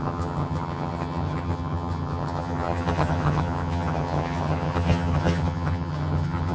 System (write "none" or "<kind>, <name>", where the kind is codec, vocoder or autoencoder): vocoder, HiFi-GAN